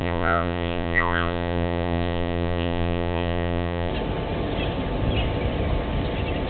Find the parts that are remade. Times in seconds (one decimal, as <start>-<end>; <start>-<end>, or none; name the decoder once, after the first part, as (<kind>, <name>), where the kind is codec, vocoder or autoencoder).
0.0-3.9 (vocoder, Vocos)